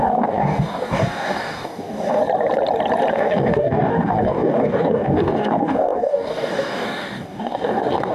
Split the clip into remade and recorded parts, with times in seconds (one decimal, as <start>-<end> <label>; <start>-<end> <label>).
0.0-2.2 remade; 2.2-3.1 recorded; 3.1-8.1 remade